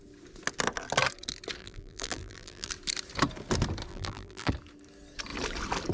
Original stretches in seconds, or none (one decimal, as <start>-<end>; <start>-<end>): 0.0-1.6; 2.7-3.9; 4.5-5.9

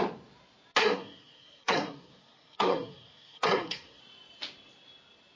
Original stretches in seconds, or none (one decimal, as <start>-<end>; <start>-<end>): 0.0-0.8; 4.0-5.4

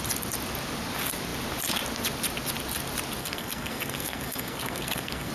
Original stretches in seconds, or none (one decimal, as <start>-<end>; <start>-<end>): 0.0-3.2